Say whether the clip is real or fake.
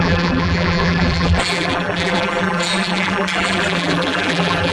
fake